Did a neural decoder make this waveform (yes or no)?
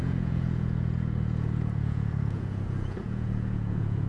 yes